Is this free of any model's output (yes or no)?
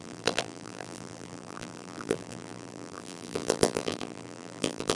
no